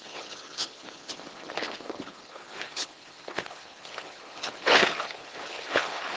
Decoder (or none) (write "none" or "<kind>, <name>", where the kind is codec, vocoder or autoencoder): codec, HILCodec